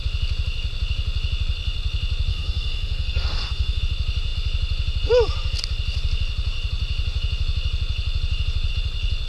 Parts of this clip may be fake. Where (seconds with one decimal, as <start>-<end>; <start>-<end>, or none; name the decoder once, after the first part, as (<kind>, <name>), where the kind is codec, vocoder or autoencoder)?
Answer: 2.3-3.8 (codec, SNAC)